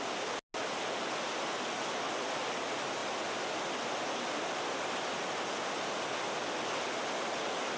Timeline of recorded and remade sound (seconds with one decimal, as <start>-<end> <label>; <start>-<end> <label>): 0.0-7.8 recorded